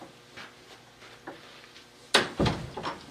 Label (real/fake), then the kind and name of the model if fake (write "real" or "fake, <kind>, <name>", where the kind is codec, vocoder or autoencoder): real